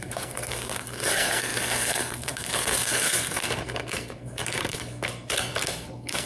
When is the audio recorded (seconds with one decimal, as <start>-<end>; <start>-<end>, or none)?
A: none